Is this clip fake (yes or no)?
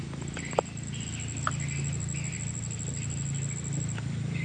no